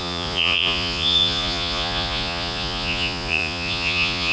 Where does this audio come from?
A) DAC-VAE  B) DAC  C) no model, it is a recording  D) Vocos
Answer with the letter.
D